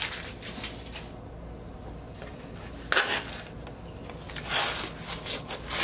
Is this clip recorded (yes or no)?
yes